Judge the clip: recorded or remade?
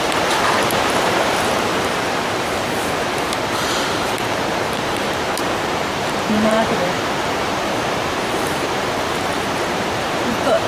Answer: remade